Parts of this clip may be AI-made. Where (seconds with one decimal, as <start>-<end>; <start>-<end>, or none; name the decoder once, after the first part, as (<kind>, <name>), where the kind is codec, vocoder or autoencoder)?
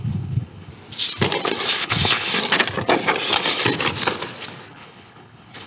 0.0-0.7 (codec, HILCodec); 1.8-2.3; 4.7-5.7